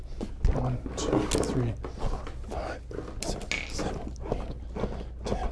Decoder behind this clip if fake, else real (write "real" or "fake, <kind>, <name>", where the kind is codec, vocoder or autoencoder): real